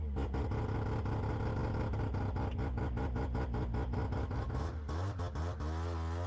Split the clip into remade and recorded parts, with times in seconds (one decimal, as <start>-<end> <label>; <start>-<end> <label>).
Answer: 0.0-6.3 recorded